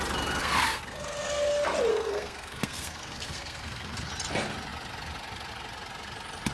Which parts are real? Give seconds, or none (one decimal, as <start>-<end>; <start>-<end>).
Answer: 0.0-0.4; 1.5-1.9; 4.1-6.5